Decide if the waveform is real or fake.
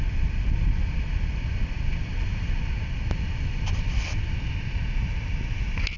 real